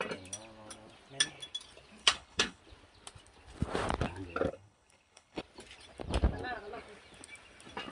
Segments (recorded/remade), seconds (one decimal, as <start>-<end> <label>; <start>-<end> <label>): 0.0-2.0 recorded; 2.0-2.6 remade; 2.6-4.5 recorded; 4.5-5.4 remade; 5.4-7.9 recorded